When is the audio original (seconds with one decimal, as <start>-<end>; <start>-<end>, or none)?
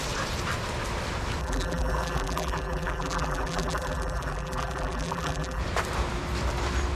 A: 0.0-1.4; 5.6-7.0